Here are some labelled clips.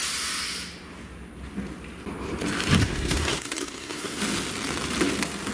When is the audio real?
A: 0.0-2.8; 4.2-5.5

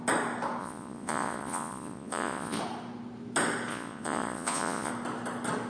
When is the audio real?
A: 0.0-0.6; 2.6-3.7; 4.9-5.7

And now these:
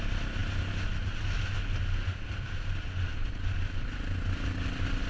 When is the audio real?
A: 0.0-5.1

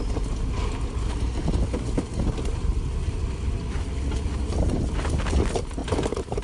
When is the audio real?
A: 0.0-5.8

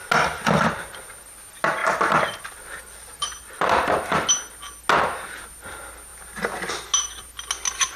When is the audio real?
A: 0.0-1.8; 4.3-8.0

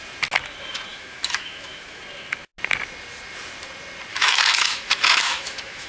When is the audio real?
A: 0.0-0.9; 2.0-4.1